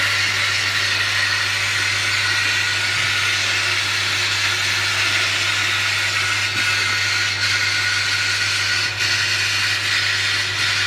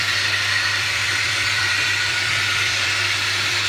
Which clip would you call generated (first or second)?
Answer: second